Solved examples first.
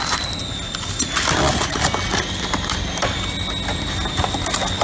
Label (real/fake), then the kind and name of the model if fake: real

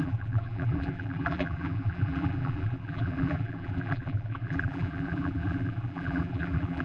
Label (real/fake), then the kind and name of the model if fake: fake, vocoder, BigVGAN v2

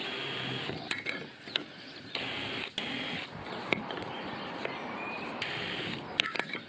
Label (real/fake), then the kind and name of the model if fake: fake, vocoder, BigVGAN v2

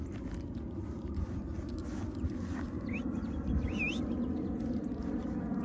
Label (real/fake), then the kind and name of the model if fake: real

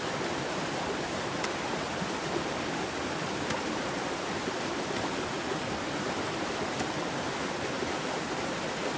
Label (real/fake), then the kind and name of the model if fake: real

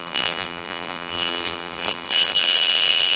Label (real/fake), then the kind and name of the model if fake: fake, vocoder, BigVGAN v2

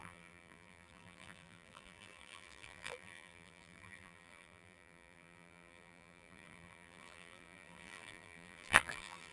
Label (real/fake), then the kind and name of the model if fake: fake, vocoder, BigVGAN v2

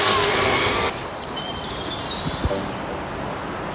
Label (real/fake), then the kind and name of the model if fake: real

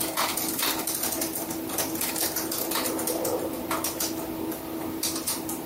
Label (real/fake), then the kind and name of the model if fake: fake, vocoder, BigVGAN v2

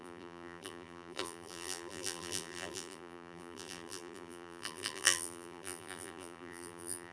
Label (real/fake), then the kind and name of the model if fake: fake, vocoder, BigVGAN v2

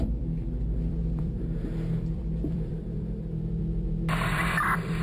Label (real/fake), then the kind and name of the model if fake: fake, vocoder, BigVGAN v2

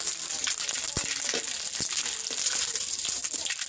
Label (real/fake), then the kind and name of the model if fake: real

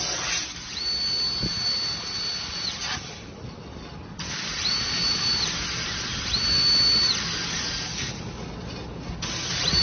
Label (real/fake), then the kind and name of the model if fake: real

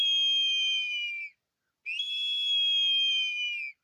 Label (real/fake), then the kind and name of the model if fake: real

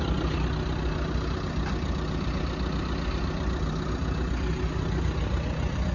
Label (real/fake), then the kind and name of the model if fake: real